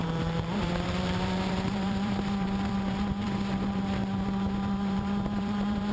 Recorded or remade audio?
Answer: remade